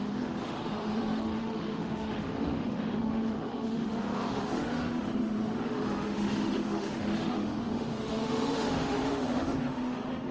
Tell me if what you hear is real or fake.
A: fake